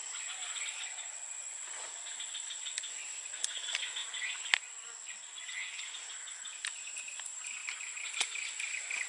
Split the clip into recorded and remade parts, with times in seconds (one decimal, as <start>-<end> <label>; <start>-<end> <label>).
0.0-9.1 recorded